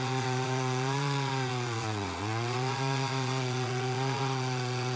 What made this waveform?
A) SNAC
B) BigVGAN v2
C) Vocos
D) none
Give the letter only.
C